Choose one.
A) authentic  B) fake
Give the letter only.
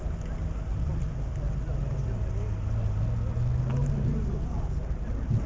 A